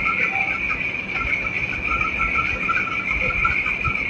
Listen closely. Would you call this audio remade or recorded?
recorded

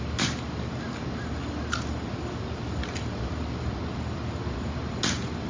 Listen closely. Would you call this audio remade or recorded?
recorded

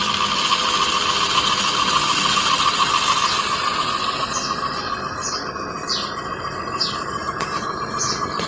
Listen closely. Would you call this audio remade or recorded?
recorded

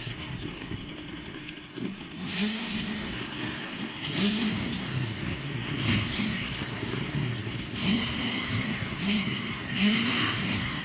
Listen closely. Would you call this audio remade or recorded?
remade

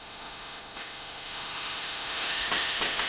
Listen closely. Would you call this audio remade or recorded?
remade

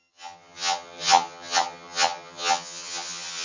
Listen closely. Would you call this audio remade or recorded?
remade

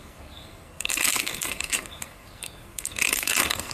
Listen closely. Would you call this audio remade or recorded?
remade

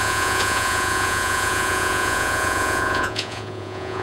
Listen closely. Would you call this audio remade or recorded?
remade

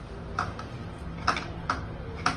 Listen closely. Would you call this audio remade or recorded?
recorded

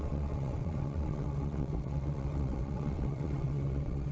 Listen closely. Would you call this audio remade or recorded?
remade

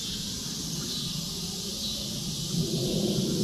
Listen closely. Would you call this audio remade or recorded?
recorded